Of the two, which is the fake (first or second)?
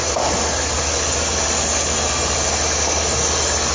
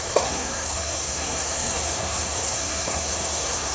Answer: second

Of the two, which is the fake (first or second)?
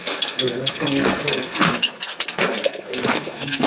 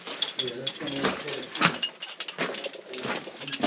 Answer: first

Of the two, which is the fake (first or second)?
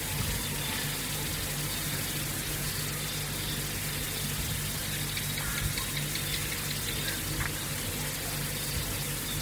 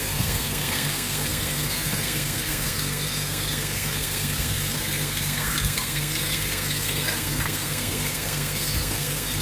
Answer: second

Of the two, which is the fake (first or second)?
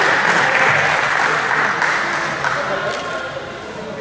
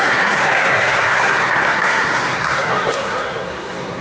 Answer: second